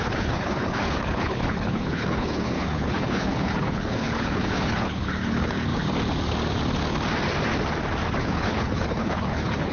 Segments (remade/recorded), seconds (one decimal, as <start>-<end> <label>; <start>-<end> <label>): 0.0-5.7 remade; 5.7-8.2 recorded; 8.2-9.7 remade